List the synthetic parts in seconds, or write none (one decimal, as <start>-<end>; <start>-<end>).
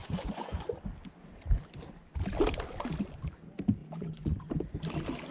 0.0-0.7; 3.8-4.5